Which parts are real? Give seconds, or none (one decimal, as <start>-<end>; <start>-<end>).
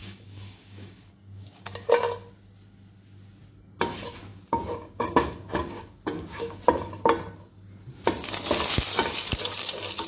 1.9-4.3; 6.6-10.1